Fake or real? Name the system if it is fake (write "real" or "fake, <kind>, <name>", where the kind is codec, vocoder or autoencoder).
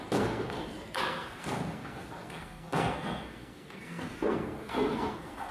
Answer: fake, codec, SNAC